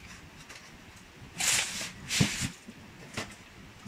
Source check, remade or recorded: recorded